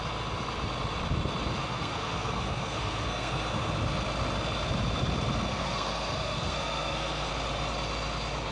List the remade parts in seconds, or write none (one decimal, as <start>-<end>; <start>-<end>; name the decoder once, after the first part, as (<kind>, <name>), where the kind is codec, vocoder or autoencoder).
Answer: 1.6-3.7 (codec, SNAC); 5.5-7.3